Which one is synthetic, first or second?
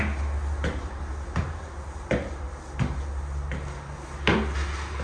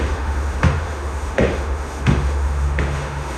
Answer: second